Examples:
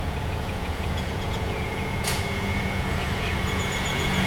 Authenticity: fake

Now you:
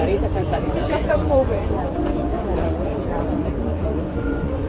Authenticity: fake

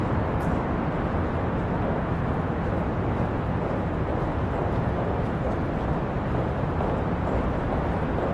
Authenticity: real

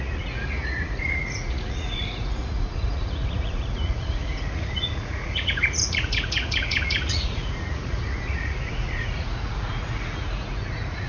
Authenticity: fake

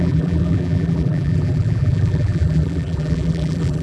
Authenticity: fake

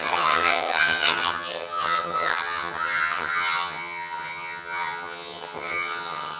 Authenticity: fake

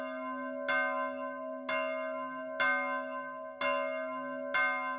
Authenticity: real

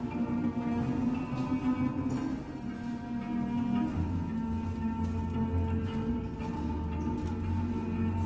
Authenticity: real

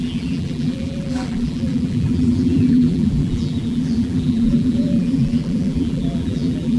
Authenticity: fake